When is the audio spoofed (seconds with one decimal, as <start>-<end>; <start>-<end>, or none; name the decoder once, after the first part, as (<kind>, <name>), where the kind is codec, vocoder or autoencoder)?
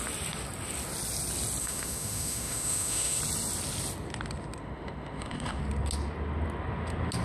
1.6-3.2 (autoencoder, DAC-VAE); 4.6-5.6